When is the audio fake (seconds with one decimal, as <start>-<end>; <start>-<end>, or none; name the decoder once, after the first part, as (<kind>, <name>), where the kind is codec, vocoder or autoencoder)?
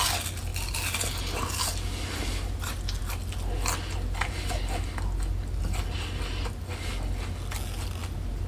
none